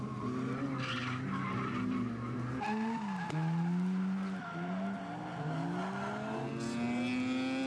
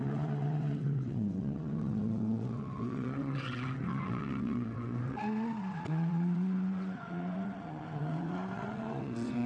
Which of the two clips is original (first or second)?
first